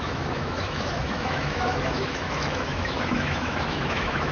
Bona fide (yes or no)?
no